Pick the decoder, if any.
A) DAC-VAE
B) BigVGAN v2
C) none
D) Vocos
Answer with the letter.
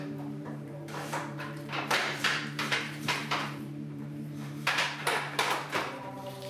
B